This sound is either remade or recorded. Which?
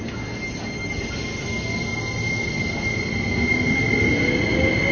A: recorded